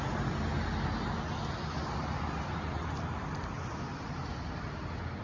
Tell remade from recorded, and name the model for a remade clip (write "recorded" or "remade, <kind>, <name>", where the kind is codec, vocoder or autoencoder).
recorded